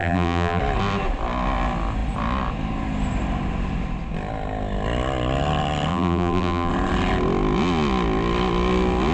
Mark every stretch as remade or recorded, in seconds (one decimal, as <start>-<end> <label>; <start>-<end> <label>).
0.0-0.6 remade; 0.6-5.9 recorded; 5.9-6.7 remade; 6.7-9.1 recorded